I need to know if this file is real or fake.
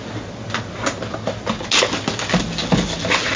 real